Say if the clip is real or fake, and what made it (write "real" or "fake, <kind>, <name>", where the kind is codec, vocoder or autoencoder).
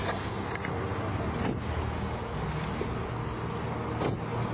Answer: real